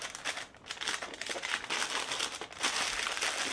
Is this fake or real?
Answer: real